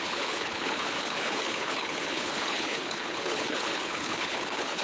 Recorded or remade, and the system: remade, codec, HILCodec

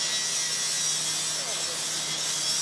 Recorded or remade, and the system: recorded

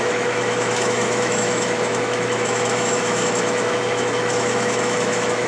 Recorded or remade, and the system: remade, autoencoder, DAC-VAE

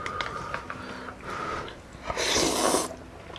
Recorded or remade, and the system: recorded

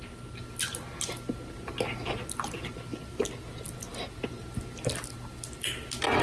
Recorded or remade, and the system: recorded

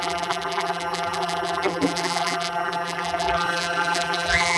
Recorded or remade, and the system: remade, vocoder, BigVGAN v2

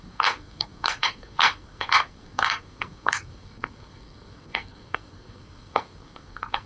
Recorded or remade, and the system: remade, codec, SNAC